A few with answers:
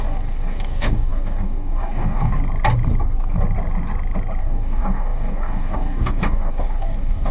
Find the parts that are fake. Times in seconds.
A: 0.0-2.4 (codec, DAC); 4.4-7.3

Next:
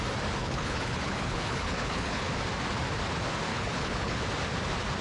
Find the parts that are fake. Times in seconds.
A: 0.4-2.3 (codec, HILCodec); 3.5-4.2

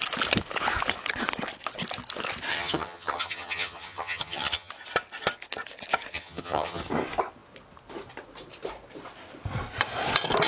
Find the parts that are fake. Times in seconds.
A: 2.5-4.7 (vocoder, HiFi-GAN); 6.1-6.8

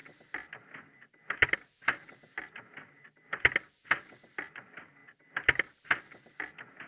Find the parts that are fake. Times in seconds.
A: none

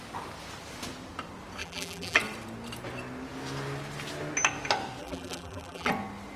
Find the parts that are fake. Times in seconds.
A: 1.6-2.2 (vocoder, BigVGAN v2); 5.0-5.9